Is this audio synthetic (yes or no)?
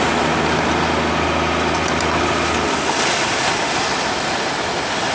no